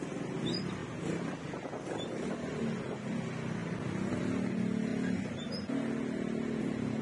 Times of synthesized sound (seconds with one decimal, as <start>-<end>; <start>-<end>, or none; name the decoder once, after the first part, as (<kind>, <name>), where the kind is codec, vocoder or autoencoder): none